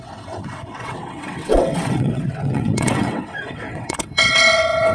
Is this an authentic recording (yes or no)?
no